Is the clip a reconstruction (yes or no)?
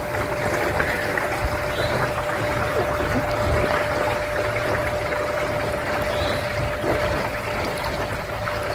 no